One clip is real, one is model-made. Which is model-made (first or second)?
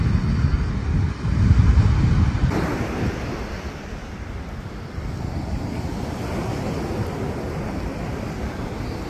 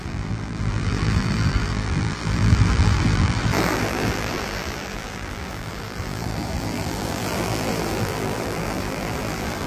second